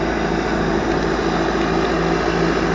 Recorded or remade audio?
recorded